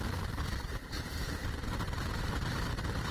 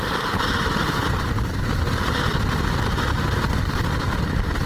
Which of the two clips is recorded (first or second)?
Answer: second